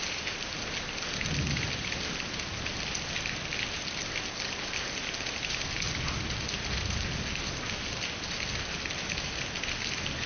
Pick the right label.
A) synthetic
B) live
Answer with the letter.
B